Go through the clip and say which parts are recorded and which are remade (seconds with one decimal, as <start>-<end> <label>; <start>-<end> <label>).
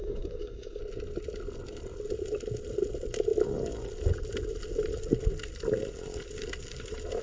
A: 0.0-0.8 remade; 0.8-7.2 recorded